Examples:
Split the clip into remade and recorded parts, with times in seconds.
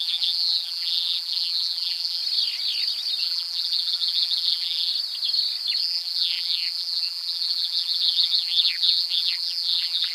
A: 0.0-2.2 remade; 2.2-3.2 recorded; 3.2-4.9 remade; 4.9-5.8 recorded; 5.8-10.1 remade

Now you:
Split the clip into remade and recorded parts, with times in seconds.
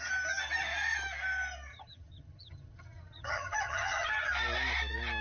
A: 0.0-1.7 recorded; 1.7-4.3 remade; 4.3-5.2 recorded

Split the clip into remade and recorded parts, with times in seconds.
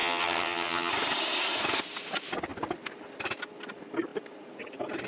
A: 0.0-0.9 remade; 0.9-5.1 recorded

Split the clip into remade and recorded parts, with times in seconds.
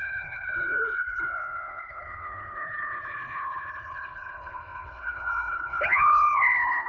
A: 0.0-6.9 remade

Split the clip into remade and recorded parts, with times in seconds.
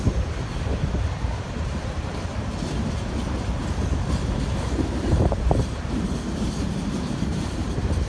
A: 0.0-0.7 remade; 0.7-1.4 recorded; 1.4-2.3 remade; 2.3-4.3 recorded; 4.3-8.1 remade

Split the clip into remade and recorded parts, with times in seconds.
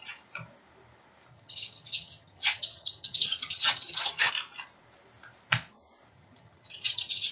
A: 0.0-1.3 recorded; 1.3-4.3 remade; 4.3-6.1 recorded; 6.1-7.3 remade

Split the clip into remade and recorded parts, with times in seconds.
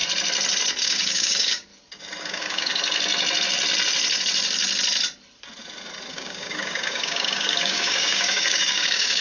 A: 0.0-0.8 recorded; 0.8-1.7 remade; 1.7-2.2 recorded; 2.2-2.7 remade; 2.7-6.1 recorded; 6.1-9.2 remade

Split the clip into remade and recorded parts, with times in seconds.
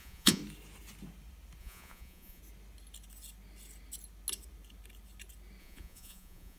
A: 0.0-0.4 remade; 0.4-1.6 recorded; 1.6-2.4 remade; 2.4-5.6 recorded; 5.6-6.6 remade